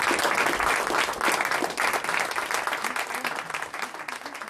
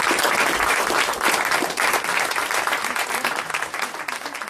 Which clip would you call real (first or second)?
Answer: first